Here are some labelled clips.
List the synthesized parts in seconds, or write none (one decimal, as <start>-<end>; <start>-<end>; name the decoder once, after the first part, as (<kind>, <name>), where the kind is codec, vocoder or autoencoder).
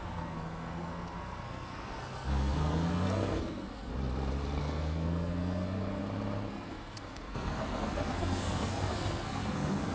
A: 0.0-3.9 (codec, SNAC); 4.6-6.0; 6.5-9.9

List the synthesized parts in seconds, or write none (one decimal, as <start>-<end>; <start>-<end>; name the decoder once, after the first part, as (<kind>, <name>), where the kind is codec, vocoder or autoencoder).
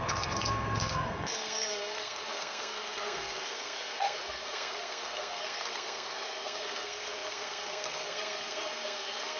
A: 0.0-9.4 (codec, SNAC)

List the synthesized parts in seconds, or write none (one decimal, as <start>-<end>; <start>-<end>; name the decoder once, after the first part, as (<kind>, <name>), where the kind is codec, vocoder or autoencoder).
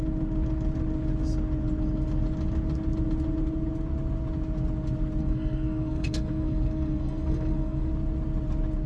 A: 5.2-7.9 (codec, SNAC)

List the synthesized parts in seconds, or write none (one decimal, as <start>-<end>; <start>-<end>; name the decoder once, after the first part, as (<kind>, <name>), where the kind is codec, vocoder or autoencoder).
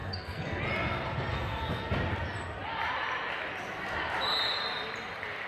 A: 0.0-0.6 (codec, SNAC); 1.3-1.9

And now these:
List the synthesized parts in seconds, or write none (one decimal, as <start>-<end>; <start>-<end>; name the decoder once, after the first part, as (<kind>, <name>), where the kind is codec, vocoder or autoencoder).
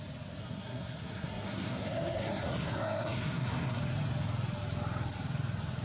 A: 0.4-3.8 (codec, SNAC)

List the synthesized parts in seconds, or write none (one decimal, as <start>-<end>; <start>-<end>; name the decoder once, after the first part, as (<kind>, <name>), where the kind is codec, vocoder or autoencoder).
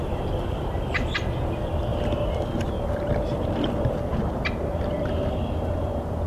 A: none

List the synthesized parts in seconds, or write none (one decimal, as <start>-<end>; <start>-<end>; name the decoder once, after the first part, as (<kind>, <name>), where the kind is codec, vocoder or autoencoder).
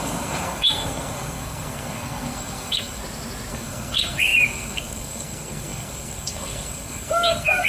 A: 0.0-3.0 (codec, SNAC); 3.5-7.7